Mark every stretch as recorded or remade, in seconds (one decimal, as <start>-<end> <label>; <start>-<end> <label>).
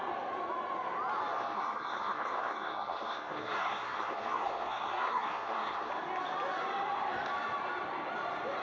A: 0.0-1.3 recorded; 1.3-5.9 remade; 5.9-8.6 recorded